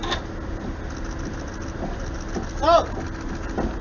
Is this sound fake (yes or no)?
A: no